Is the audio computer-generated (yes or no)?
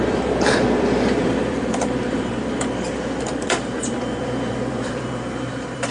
yes